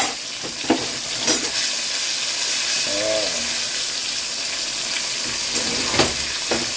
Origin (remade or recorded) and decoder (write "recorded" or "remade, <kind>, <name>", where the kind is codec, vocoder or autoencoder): recorded